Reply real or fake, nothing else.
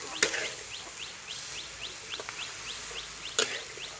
real